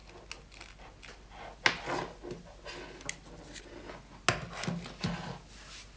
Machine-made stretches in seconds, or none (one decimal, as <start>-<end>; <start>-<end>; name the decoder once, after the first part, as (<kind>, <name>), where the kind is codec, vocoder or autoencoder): none